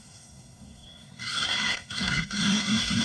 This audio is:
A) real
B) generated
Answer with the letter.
B